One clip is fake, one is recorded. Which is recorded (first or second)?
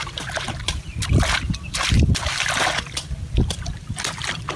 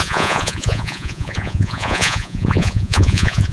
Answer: first